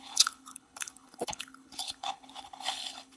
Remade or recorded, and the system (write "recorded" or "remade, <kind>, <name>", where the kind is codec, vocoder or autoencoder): remade, codec, HILCodec